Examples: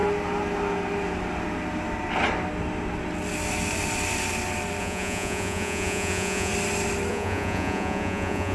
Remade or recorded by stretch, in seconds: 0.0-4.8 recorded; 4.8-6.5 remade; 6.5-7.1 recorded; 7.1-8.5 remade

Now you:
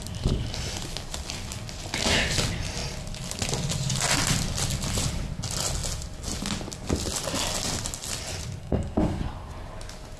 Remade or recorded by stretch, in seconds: 0.0-8.6 recorded; 8.6-9.2 remade; 9.2-10.2 recorded

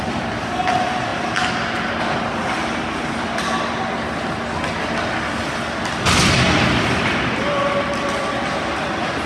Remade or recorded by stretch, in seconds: 0.0-9.3 recorded

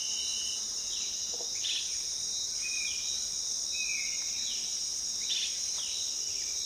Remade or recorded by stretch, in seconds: 0.0-2.3 remade; 2.3-6.7 recorded

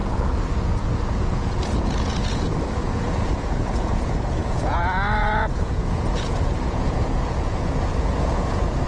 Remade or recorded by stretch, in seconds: 0.0-8.9 remade